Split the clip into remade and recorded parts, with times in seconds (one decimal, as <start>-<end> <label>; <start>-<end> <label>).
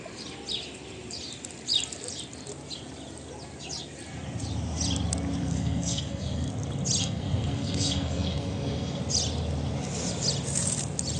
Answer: 0.0-5.4 recorded; 5.4-6.5 remade; 6.5-7.0 recorded; 7.0-9.0 remade; 9.0-11.2 recorded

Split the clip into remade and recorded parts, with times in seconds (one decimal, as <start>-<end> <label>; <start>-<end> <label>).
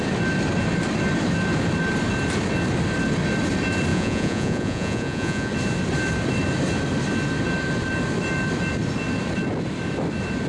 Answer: 0.0-3.9 recorded; 3.9-5.5 remade; 5.5-10.5 recorded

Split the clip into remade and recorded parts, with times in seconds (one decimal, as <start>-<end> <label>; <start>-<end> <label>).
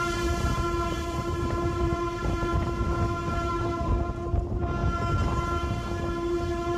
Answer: 0.0-2.5 remade; 2.5-3.6 recorded; 3.6-4.8 remade; 4.8-6.3 recorded; 6.3-6.8 remade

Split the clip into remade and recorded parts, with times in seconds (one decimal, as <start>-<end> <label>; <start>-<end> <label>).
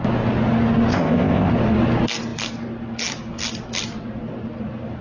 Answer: 0.0-0.9 recorded; 0.9-1.5 remade; 1.5-5.0 recorded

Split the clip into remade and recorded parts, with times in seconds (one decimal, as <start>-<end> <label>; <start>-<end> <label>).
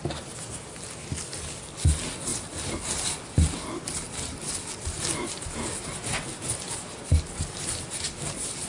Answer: 0.0-8.7 recorded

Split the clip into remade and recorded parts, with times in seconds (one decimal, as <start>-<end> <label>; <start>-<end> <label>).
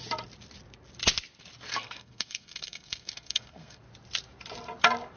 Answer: 0.0-1.7 recorded; 1.7-3.8 remade; 3.8-5.2 recorded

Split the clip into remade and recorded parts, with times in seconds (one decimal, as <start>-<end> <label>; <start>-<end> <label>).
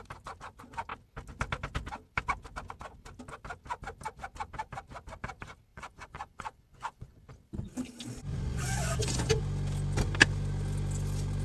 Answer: 0.0-5.7 recorded; 5.7-7.3 remade; 7.3-8.3 recorded; 8.3-9.4 remade; 9.4-11.4 recorded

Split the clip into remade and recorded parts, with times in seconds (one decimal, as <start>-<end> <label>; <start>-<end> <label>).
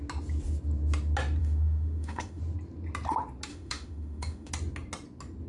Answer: 0.0-1.4 recorded; 1.4-2.4 remade; 2.4-3.5 recorded; 3.5-4.5 remade; 4.5-5.5 recorded